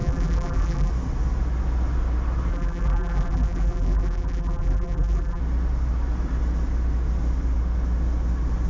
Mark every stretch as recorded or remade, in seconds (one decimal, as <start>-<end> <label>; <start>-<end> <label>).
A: 0.0-0.9 remade; 0.9-2.5 recorded; 2.5-5.4 remade; 5.4-8.7 recorded